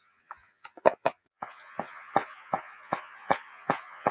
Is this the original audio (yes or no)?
no